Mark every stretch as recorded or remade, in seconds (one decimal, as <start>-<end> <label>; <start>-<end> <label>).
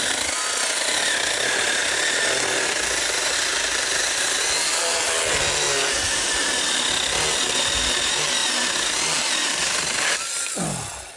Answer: 0.0-11.2 recorded